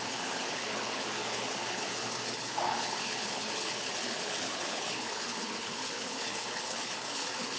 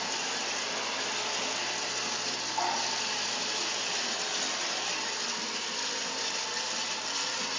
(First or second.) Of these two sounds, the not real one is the first